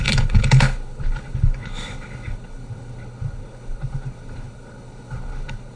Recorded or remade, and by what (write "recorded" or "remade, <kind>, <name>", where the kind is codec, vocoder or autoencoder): remade, codec, HILCodec